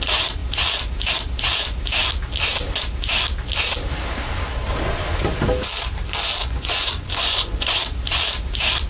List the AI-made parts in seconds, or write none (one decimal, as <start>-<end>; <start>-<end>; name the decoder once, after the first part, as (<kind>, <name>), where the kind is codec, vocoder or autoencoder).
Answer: 6.4-7.7 (vocoder, Vocos)